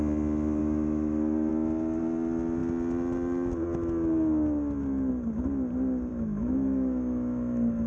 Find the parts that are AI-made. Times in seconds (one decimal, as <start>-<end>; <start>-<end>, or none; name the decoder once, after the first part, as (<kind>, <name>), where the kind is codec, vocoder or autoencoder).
0.6-1.5 (autoencoder, DAC-VAE); 6.1-7.9